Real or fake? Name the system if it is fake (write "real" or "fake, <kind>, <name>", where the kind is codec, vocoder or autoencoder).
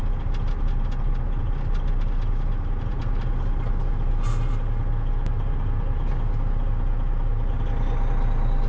real